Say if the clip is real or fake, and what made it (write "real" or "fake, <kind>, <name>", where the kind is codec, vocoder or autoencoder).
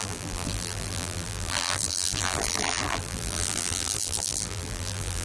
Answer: fake, vocoder, BigVGAN v2